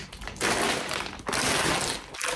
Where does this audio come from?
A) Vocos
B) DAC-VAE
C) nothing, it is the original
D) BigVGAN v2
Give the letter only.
C